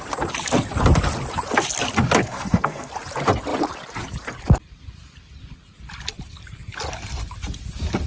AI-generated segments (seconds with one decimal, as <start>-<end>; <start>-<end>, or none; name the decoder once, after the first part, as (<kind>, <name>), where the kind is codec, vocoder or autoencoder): 2.2-2.9 (codec, SNAC)